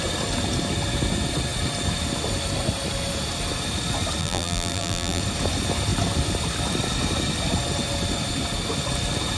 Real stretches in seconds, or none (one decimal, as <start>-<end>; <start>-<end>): 0.0-4.2; 5.2-9.4

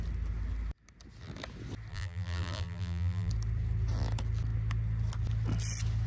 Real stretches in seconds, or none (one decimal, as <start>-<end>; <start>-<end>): 0.0-1.9; 3.3-6.1

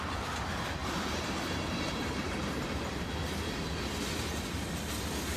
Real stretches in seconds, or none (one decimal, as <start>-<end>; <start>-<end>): 0.0-0.8; 3.1-5.4

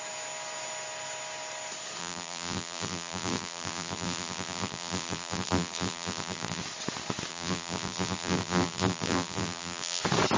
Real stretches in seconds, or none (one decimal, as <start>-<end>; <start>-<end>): 0.0-2.0; 6.6-7.3; 10.0-10.4

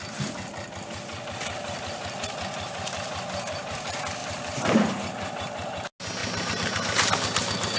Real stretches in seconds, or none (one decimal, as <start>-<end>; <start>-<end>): 0.0-4.2; 5.8-6.2; 7.1-7.8

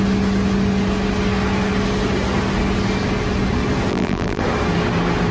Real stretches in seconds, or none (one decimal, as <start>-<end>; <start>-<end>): 0.0-3.9; 4.4-5.3

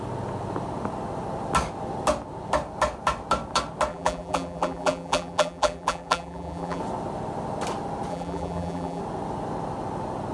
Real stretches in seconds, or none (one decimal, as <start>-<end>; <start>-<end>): 0.0-3.9; 6.8-8.1; 9.0-10.3

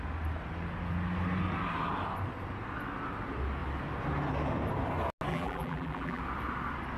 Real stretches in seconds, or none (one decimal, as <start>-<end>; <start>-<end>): 0.0-5.3; 6.2-7.0